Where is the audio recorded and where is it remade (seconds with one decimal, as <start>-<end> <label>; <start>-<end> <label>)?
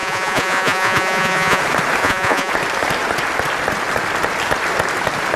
0.0-1.6 remade; 1.6-2.0 recorded; 2.0-2.5 remade; 2.5-5.4 recorded